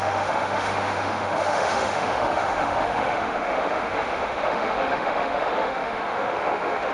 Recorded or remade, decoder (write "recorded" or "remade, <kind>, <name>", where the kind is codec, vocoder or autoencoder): remade, autoencoder, DAC-VAE